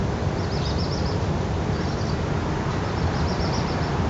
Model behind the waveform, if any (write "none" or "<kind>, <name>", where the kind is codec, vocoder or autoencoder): none